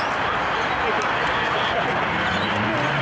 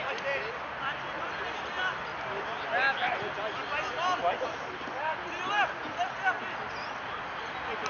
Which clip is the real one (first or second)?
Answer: second